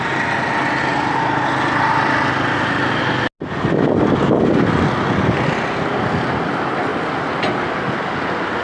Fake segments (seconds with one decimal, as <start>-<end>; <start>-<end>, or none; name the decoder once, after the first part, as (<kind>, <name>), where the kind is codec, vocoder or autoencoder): none